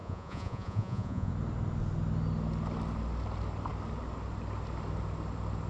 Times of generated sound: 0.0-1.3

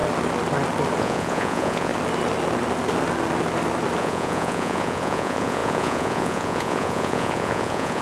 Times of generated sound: 1.0-1.9; 4.0-8.0

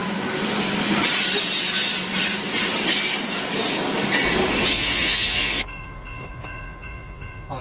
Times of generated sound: 4.6-7.6

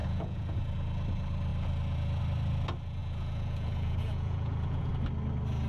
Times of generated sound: 0.0-0.6; 3.0-4.9

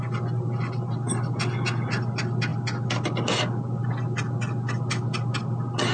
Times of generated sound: none

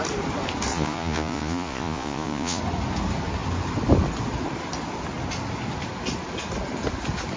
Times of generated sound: 0.7-2.6

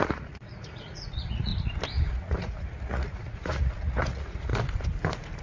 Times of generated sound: 0.0-1.5; 2.1-4.5